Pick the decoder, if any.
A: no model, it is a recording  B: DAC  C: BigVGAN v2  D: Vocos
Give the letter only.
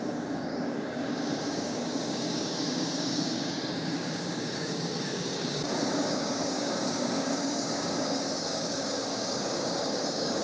B